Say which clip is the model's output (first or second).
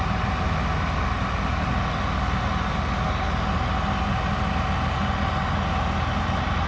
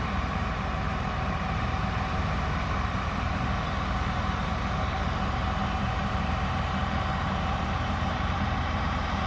second